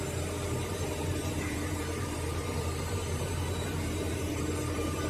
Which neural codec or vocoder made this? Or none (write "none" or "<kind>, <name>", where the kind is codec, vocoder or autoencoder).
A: vocoder, BigVGAN v2